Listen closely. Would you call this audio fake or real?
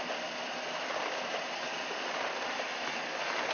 real